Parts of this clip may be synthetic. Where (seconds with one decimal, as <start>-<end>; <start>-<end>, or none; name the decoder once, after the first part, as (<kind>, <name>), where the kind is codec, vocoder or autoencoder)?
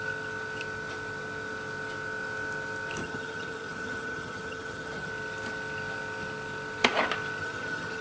3.0-5.1 (vocoder, HiFi-GAN); 7.4-8.0